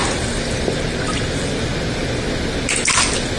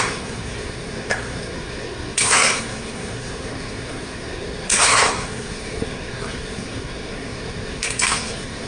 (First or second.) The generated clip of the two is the second